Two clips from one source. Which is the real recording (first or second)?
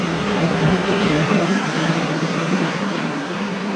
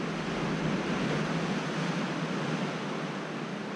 second